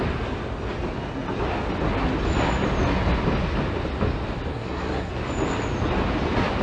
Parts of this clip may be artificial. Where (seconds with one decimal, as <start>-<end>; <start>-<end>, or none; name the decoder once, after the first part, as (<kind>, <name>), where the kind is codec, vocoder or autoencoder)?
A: 4.5-5.1 (codec, SNAC)